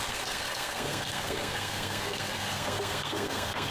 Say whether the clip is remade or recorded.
remade